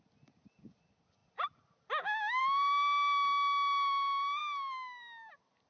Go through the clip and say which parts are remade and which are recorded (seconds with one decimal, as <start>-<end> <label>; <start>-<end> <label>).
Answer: 0.0-5.7 recorded